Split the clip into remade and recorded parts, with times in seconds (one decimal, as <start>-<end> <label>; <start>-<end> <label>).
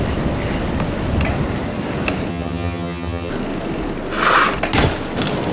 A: 0.0-2.3 recorded; 2.3-3.3 remade; 3.3-5.5 recorded